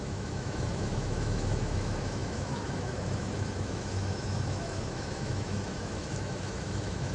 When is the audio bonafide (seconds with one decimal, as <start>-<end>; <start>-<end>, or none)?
none